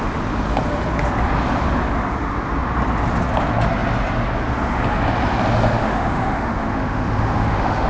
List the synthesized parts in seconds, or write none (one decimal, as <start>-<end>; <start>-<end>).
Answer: 5.8-7.9